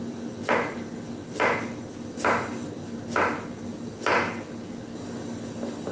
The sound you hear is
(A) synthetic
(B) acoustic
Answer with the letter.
B